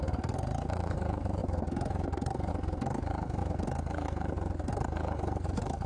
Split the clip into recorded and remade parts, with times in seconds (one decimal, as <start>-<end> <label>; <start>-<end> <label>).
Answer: 0.0-5.9 remade

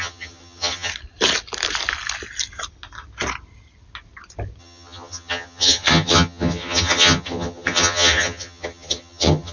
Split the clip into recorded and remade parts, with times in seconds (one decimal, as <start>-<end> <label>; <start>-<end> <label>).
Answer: 0.0-0.9 remade; 0.9-4.6 recorded; 4.6-9.5 remade

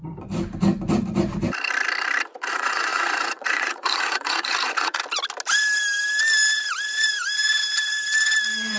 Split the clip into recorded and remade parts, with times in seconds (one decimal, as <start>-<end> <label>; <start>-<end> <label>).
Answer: 0.0-2.5 recorded; 2.5-5.0 remade; 5.0-8.8 recorded

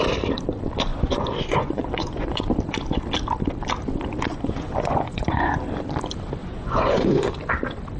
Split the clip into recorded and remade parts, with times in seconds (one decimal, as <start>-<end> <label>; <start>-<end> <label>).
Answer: 0.0-0.9 recorded; 0.9-2.4 remade; 2.4-4.3 recorded; 4.3-5.6 remade; 5.6-6.4 recorded; 6.4-7.3 remade; 7.3-8.0 recorded

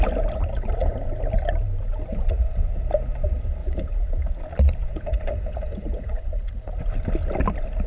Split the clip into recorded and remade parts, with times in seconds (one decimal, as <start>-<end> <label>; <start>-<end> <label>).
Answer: 0.0-2.1 recorded; 2.1-2.6 remade; 2.6-3.6 recorded; 3.6-4.1 remade; 4.1-4.8 recorded; 4.8-6.7 remade; 6.7-7.9 recorded